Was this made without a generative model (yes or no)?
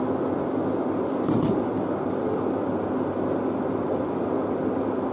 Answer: yes